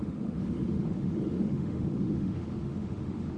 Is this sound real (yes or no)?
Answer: no